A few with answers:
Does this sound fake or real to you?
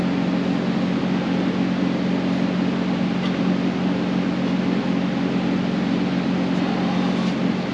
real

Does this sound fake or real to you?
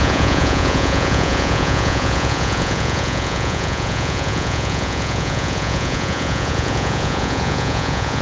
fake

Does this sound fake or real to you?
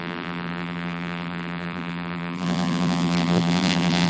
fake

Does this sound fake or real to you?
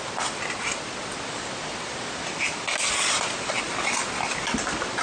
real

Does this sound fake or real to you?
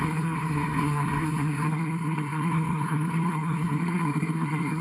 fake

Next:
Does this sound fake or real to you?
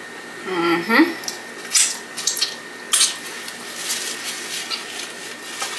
real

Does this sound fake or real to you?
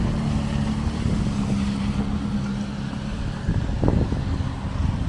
real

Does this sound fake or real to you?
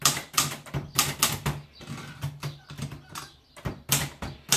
real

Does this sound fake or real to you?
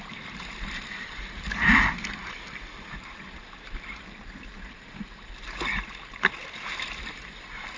real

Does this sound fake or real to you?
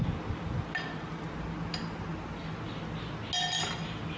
real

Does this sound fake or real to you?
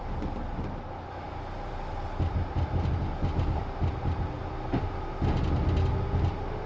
real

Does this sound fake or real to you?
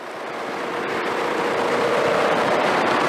fake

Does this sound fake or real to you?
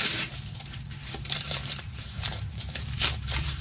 fake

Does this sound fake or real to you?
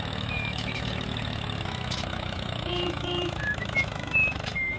fake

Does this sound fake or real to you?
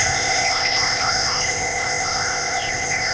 fake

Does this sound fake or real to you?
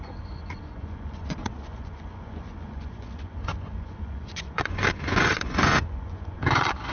fake